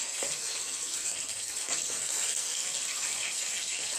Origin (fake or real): fake